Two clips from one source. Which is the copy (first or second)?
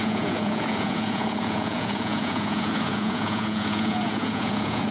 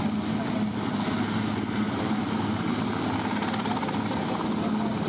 first